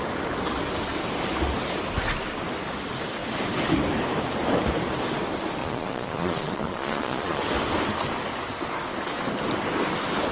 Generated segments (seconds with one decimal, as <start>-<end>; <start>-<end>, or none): 5.6-7.4